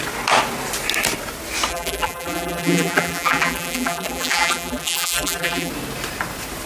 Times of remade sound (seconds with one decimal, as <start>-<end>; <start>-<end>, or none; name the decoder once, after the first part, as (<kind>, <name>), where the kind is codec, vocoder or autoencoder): 1.7-5.7 (vocoder, BigVGAN v2)